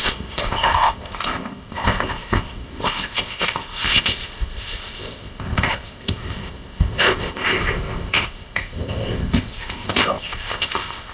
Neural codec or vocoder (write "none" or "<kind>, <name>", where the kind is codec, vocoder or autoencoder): codec, ZipCodec